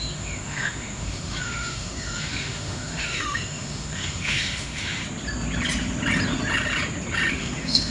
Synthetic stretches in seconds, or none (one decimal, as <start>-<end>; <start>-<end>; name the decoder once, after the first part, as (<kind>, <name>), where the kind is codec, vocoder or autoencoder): 0.0-5.0 (autoencoder, DAC-VAE); 7.3-7.9